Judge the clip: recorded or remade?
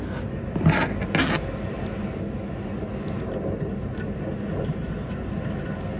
recorded